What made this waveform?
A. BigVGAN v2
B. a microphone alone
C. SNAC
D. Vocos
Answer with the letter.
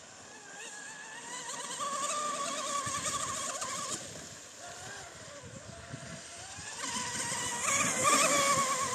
B